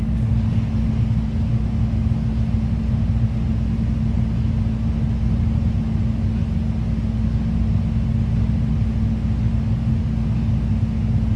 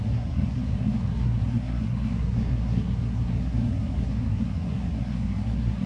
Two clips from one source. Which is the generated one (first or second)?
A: second